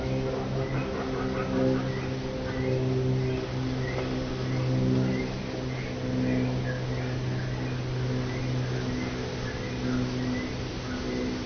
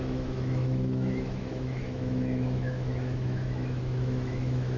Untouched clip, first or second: first